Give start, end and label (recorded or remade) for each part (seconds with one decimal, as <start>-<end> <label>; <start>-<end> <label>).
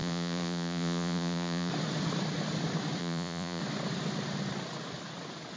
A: 0.0-1.7 remade; 1.7-3.0 recorded; 3.0-3.6 remade; 3.6-5.6 recorded